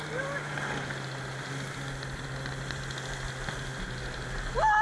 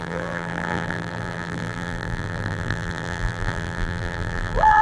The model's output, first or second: second